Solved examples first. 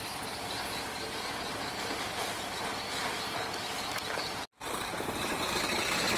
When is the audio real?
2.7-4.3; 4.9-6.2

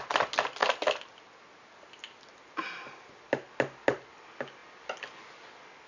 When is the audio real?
0.0-5.9

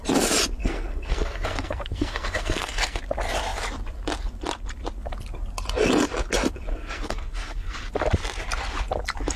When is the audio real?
0.0-0.6; 3.0-6.7; 7.8-9.4